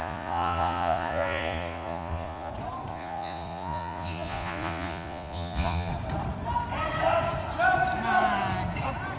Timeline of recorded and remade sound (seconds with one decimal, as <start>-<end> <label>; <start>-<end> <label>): 0.0-2.5 remade; 2.5-2.9 recorded; 2.9-5.9 remade; 5.9-9.2 recorded